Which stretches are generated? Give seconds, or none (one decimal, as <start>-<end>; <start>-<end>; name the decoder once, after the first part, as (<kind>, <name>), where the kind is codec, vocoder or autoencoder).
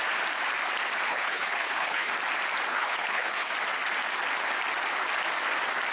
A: 1.1-2.1 (codec, HILCodec); 2.7-3.5